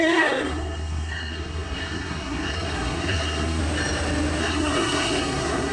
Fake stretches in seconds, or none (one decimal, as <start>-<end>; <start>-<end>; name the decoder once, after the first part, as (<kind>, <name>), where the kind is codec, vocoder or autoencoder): 0.0-3.6 (codec, SNAC); 4.4-5.7